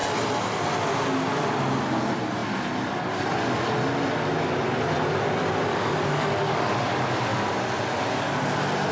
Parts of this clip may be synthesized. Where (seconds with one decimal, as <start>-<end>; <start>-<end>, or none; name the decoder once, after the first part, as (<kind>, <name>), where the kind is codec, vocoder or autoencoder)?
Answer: 5.7-6.7 (codec, DAC)